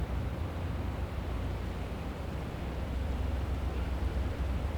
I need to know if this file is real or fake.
fake